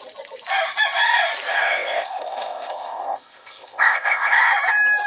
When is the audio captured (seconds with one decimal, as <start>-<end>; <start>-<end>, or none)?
0.0-1.5; 4.4-5.1